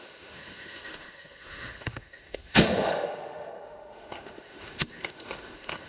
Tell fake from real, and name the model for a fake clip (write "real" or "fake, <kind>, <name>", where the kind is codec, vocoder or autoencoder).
fake, autoencoder, DAC-VAE